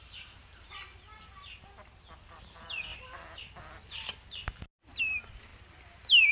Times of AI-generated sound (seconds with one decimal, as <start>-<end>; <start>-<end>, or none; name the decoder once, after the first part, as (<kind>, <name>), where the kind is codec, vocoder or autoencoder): none